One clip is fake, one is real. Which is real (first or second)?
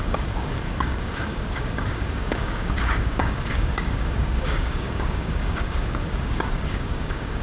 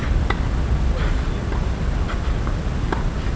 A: second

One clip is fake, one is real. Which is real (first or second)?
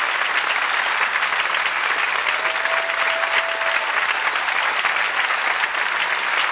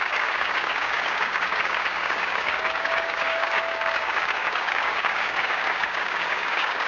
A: first